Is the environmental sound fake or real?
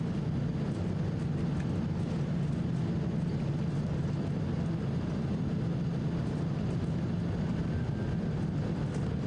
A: real